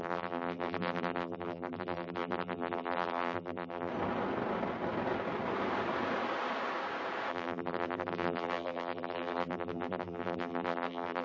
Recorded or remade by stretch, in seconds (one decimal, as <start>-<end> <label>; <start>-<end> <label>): 0.0-3.9 remade; 3.9-7.3 recorded; 7.3-11.2 remade